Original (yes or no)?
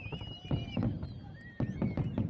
yes